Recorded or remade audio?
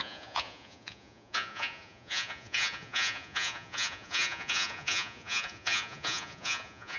remade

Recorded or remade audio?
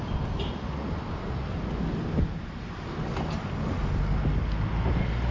recorded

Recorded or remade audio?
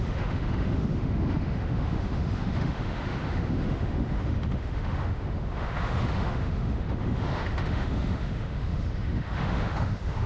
remade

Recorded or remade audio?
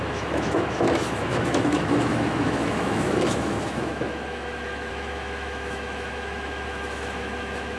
remade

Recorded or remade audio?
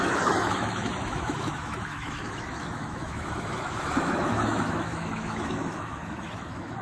remade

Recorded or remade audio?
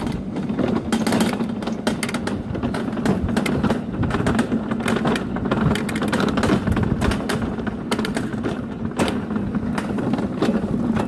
recorded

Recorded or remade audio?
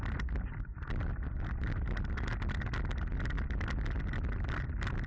recorded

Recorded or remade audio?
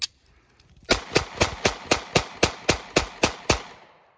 recorded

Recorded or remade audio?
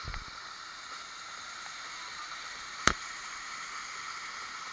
recorded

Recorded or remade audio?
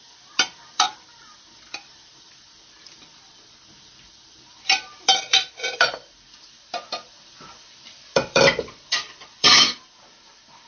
remade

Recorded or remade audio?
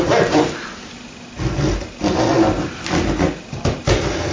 recorded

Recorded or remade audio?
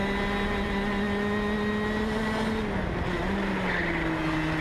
recorded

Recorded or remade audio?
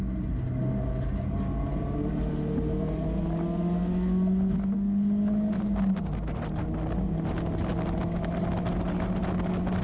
recorded